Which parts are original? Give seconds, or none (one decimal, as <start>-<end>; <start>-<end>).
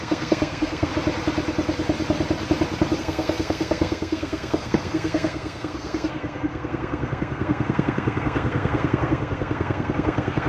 0.9-3.0